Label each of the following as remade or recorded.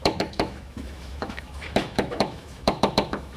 remade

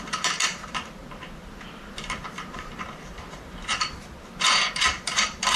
remade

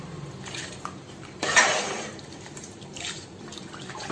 remade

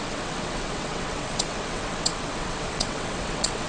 remade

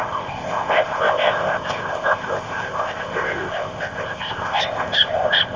remade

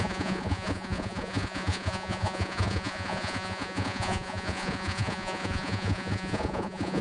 remade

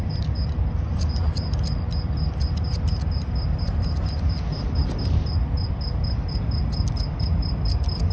recorded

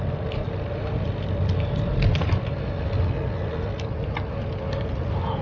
recorded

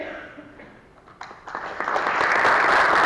recorded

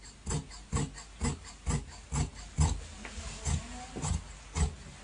recorded